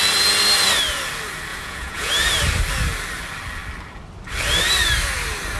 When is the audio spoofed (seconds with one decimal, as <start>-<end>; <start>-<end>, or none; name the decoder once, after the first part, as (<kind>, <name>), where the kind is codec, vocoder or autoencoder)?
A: 1.5-2.1 (vocoder, Vocos)